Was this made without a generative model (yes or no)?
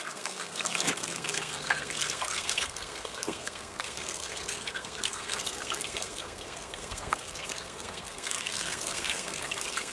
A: no